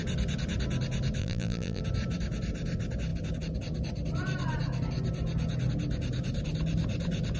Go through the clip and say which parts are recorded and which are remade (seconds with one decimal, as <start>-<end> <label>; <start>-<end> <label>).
0.0-1.2 recorded; 1.2-1.8 remade; 1.8-7.4 recorded